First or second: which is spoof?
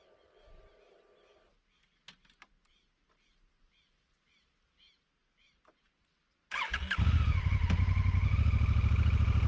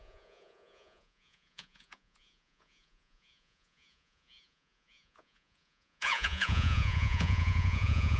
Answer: second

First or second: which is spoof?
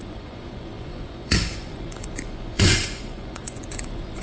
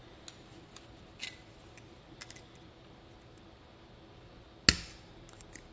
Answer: first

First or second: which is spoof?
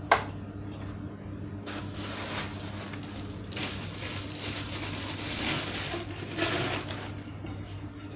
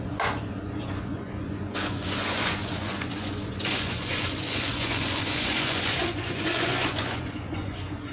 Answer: second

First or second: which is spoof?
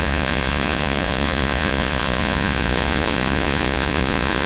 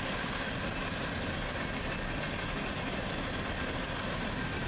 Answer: first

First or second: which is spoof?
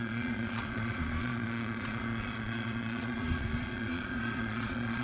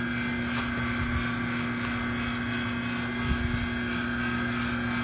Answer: first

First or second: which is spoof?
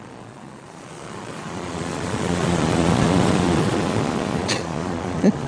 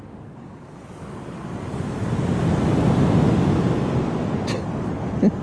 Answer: first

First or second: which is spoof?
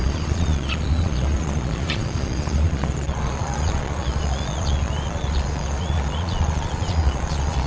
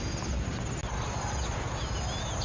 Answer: first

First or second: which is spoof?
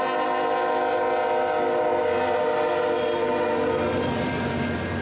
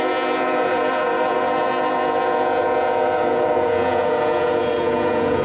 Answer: second